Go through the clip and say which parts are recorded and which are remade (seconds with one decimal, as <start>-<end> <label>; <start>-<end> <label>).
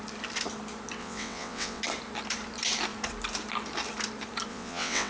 0.0-1.0 recorded; 1.0-1.8 remade; 1.8-4.5 recorded; 4.5-5.1 remade